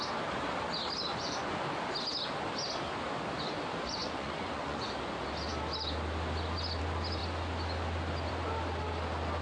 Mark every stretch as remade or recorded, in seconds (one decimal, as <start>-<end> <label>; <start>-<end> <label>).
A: 0.0-1.1 recorded; 1.1-1.6 remade; 1.6-4.0 recorded; 4.0-4.9 remade; 4.9-9.4 recorded